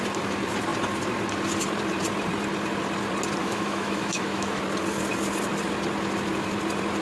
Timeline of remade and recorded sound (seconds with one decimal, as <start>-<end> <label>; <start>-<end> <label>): 0.0-3.4 recorded; 3.4-4.6 remade; 4.6-7.0 recorded